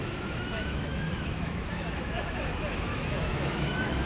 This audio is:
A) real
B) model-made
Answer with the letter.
B